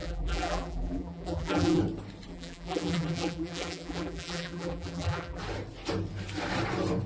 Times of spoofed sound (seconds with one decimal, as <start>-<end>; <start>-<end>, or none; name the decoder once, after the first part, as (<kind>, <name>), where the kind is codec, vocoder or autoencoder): 0.0-1.8 (vocoder, BigVGAN v2); 2.3-5.4